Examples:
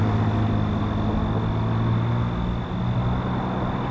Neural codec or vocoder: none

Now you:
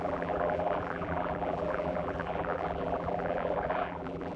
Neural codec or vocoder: vocoder, BigVGAN v2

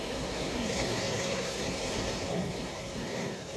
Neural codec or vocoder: codec, SNAC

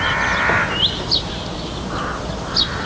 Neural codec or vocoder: none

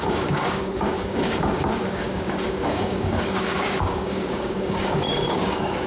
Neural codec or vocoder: codec, DAC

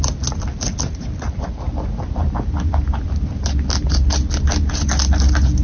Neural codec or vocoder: none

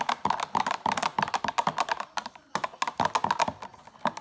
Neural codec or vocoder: none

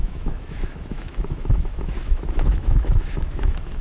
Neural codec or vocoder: autoencoder, DAC-VAE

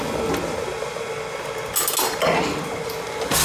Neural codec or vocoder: none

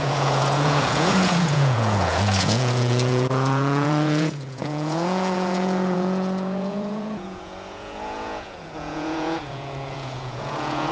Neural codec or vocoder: vocoder, Vocos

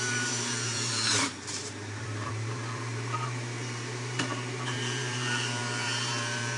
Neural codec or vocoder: vocoder, BigVGAN v2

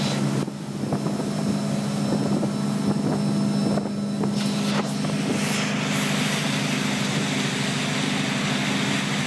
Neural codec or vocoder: none